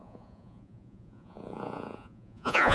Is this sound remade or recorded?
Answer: remade